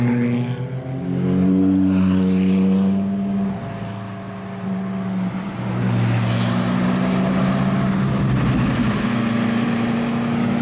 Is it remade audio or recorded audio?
recorded